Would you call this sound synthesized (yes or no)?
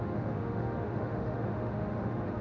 yes